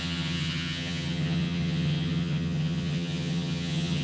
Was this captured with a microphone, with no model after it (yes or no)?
no